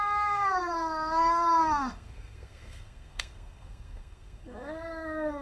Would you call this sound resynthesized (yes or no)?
yes